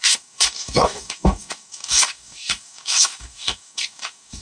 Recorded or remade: remade